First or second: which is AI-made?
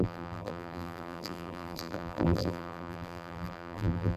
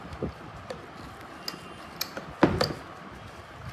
first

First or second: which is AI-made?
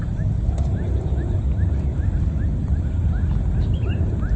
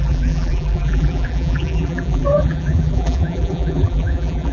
second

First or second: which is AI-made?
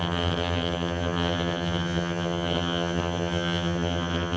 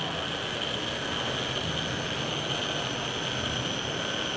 first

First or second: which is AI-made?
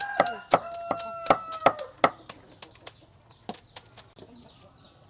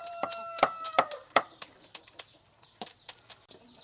second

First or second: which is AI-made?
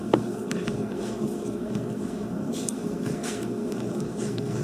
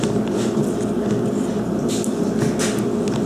first